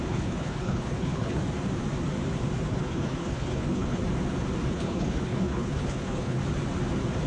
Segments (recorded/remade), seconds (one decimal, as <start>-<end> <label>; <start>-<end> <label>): 0.0-1.4 remade; 1.4-2.7 recorded; 2.7-4.0 remade; 4.0-4.7 recorded; 4.7-6.4 remade; 6.4-7.3 recorded